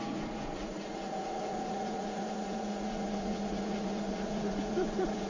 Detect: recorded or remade remade